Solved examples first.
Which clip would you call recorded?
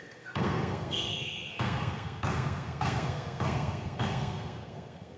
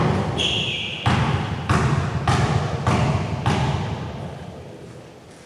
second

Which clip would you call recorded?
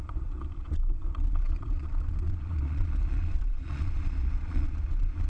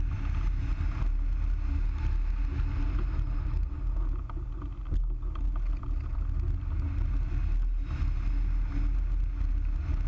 second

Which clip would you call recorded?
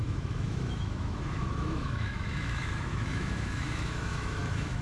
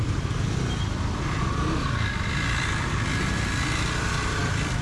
second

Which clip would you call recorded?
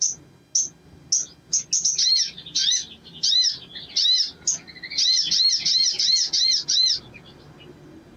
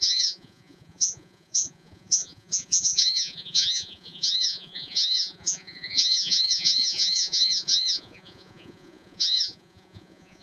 first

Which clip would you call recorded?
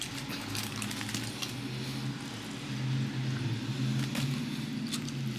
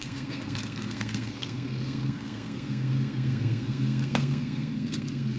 first